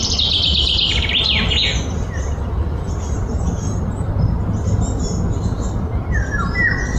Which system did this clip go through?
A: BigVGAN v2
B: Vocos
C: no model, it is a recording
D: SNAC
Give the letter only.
C